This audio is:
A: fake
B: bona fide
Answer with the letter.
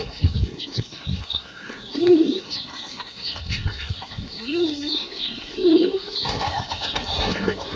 A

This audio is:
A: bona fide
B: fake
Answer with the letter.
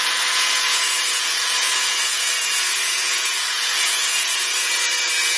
B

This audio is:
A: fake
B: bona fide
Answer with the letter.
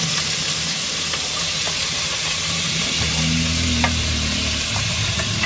A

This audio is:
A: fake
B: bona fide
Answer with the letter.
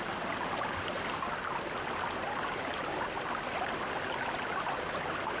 B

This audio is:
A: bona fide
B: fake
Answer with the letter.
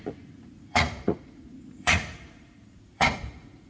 B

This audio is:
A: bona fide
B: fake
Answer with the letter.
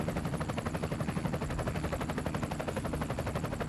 A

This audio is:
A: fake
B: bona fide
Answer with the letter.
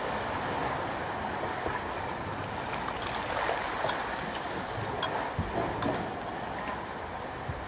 B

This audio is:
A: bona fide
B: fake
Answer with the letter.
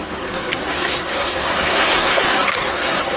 B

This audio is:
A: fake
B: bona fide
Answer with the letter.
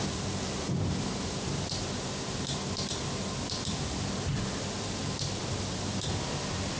B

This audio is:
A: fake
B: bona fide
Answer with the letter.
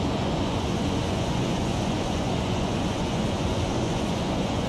A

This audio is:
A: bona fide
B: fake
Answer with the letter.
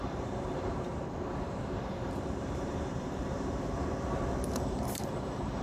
B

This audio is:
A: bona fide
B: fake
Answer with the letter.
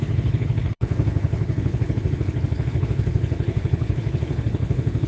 B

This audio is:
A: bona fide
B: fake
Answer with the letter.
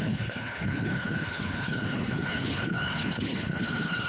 B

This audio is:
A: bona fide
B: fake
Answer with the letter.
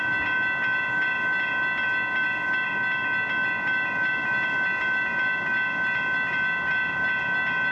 A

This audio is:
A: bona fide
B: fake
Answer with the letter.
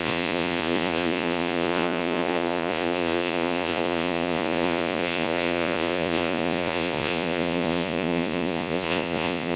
B